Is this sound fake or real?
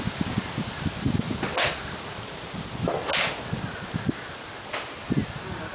real